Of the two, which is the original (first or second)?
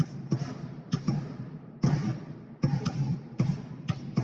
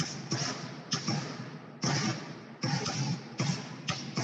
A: second